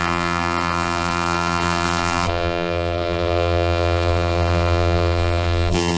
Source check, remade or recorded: remade